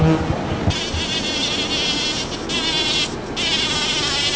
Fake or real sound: real